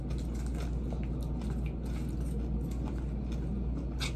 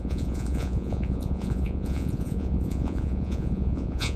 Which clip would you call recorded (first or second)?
first